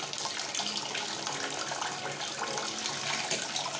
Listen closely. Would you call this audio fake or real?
real